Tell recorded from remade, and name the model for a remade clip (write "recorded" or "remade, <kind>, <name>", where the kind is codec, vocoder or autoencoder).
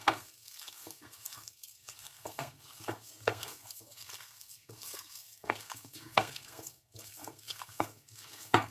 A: remade, codec, SNAC